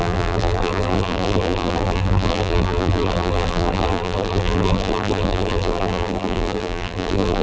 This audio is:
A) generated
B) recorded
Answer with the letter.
A